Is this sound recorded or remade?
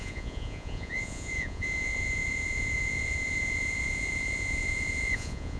remade